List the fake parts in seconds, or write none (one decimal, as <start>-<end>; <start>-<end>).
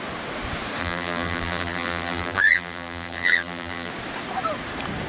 0.8-3.9